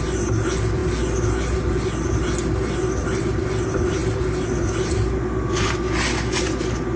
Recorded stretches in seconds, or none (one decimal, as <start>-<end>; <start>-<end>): 0.0-7.0